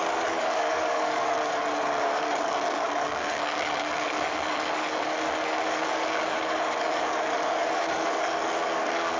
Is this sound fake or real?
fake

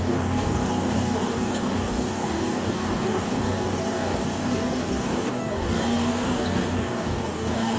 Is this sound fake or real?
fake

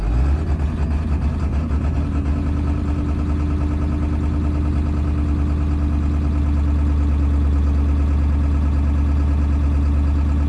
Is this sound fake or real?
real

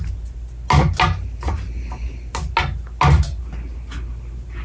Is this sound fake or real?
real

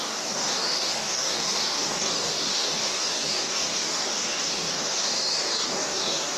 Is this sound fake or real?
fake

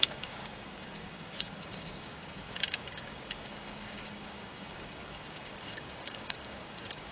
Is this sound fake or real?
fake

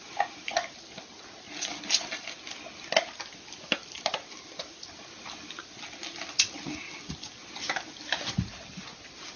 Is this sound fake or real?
real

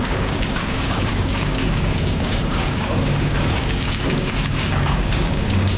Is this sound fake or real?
fake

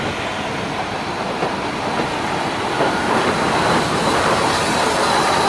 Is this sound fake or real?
real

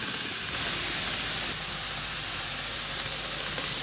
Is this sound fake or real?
real